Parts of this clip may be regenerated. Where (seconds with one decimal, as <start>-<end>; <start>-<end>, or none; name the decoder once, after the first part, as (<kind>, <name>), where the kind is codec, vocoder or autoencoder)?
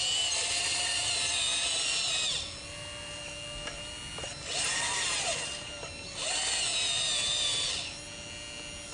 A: none